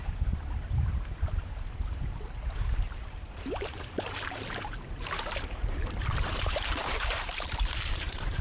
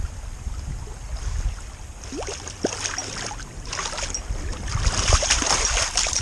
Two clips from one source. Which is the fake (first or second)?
first